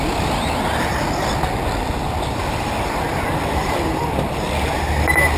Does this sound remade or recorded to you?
recorded